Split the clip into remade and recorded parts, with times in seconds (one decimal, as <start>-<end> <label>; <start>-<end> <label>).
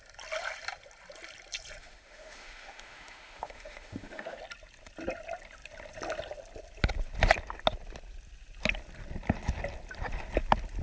0.0-1.8 recorded; 1.8-4.4 remade; 4.4-10.8 recorded